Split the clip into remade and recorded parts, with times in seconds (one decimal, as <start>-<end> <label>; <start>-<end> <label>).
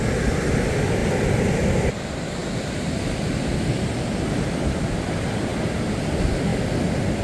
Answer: 0.0-2.4 recorded; 2.4-3.7 remade; 3.7-5.5 recorded; 5.5-6.1 remade; 6.1-6.5 recorded; 6.5-7.2 remade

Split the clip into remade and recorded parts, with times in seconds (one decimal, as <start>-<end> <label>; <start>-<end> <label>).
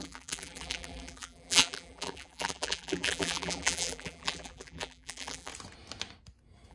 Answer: 0.0-5.5 remade; 5.5-6.7 recorded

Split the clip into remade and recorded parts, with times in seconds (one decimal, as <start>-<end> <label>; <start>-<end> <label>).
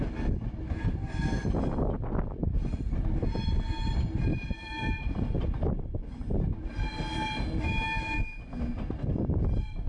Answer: 0.0-4.3 recorded; 4.3-6.7 remade; 6.7-9.9 recorded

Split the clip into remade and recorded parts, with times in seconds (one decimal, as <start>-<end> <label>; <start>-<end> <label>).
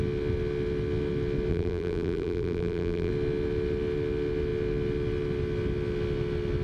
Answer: 0.0-1.5 recorded; 1.5-3.1 remade; 3.1-6.6 recorded